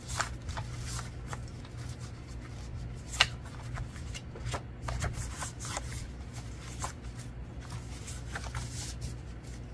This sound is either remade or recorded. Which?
recorded